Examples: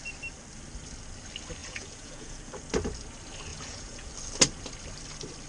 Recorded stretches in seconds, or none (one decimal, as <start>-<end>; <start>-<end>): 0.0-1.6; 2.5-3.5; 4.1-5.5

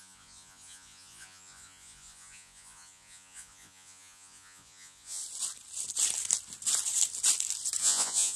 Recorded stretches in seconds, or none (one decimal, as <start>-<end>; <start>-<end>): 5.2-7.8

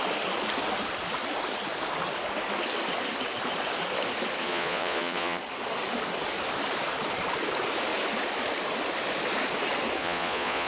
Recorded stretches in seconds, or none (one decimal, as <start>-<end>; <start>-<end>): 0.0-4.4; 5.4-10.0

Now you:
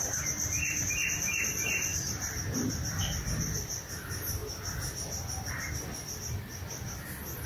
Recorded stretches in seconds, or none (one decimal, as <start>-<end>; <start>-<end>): 4.4-5.5

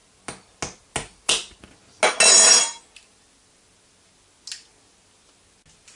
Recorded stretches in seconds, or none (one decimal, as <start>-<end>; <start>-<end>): 0.0-6.0

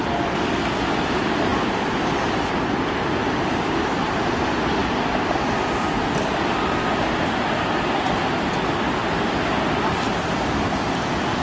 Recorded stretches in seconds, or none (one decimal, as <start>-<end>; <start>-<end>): 0.0-11.4

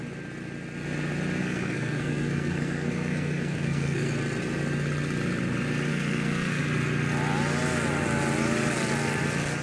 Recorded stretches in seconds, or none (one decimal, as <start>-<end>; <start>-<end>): 0.0-1.4; 4.1-5.9; 6.6-9.6